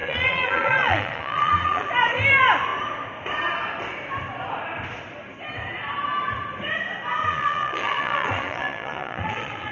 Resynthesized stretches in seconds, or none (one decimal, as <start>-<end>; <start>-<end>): 0.0-1.9; 7.2-9.7